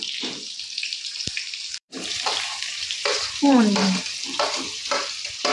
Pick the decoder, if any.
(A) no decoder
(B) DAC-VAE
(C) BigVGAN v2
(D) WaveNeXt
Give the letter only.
C